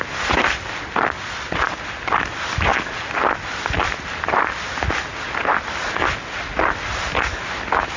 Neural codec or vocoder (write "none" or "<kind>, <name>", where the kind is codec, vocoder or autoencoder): none